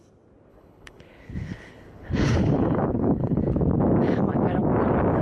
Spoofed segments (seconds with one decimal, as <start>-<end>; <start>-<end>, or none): 0.5-3.4